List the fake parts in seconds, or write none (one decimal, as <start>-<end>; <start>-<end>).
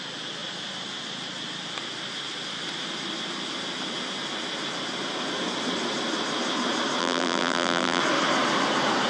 7.0-8.0